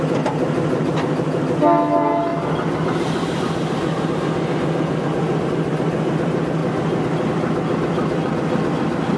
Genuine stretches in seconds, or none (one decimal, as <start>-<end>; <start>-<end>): 0.0-9.2